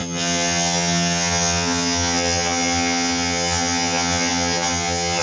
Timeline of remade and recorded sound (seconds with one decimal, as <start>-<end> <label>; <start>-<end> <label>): 0.0-5.2 remade